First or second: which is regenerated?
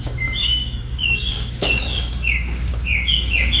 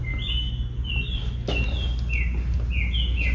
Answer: first